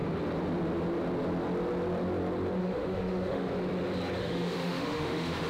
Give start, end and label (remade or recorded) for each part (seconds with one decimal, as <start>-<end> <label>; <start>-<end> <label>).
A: 0.0-2.6 recorded; 2.6-3.5 remade; 3.5-4.2 recorded; 4.2-5.5 remade